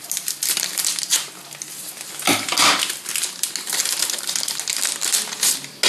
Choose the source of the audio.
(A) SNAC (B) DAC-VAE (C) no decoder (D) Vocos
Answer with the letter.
C